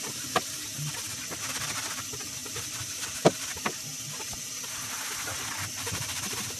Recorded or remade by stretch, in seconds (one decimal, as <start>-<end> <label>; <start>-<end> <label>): 0.0-6.6 recorded